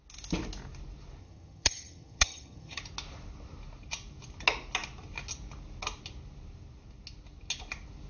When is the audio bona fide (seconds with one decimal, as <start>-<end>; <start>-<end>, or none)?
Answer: 0.0-1.2; 2.8-8.1